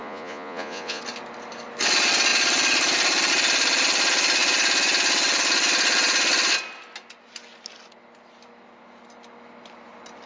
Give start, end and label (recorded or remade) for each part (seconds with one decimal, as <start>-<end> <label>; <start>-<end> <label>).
0.0-1.0 remade; 1.0-10.3 recorded